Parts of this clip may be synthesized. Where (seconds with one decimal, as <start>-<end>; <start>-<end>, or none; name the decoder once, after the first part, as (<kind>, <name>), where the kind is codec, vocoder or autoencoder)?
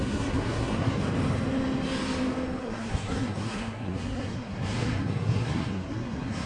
0.0-1.0 (codec, SNAC); 2.6-6.5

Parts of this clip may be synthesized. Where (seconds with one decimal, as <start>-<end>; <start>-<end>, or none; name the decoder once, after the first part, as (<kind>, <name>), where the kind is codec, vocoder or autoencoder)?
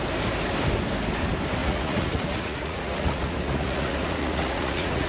1.6-5.1 (vocoder, Vocos)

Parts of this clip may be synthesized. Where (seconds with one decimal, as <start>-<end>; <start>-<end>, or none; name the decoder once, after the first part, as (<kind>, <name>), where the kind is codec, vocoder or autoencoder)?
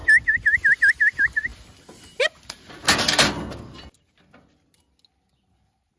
none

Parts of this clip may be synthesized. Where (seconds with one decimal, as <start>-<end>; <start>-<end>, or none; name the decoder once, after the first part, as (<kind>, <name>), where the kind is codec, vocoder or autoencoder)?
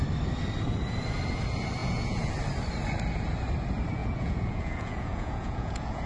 1.8-2.3 (vocoder, Vocos); 4.0-6.1